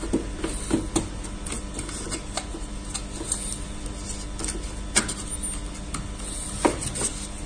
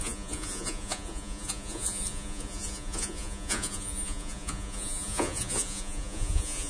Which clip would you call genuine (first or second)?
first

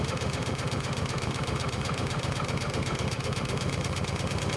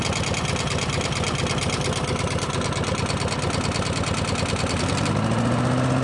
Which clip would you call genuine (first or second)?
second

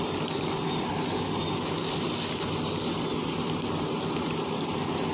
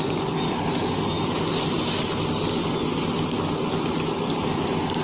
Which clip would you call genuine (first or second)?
second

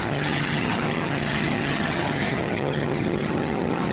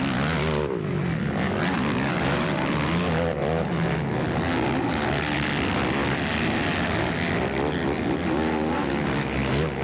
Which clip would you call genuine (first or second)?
second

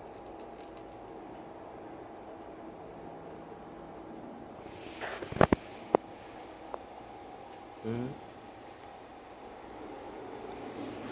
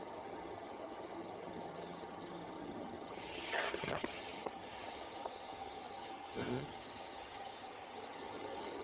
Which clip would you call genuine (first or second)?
first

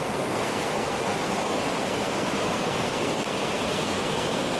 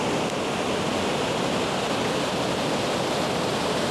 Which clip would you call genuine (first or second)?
second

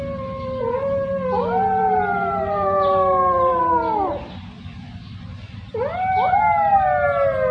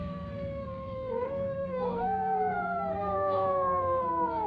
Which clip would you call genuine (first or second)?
first